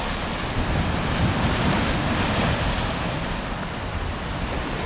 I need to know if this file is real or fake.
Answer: real